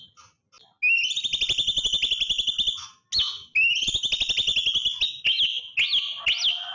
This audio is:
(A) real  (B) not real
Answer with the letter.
A